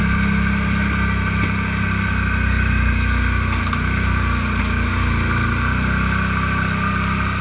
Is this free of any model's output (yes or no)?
yes